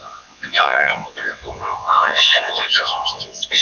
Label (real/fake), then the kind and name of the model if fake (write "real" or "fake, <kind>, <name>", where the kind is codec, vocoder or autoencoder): fake, vocoder, WaveNeXt